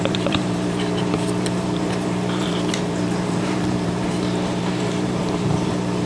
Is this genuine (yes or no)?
no